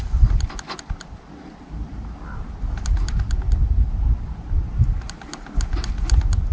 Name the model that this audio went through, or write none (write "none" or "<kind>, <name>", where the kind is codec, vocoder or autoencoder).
none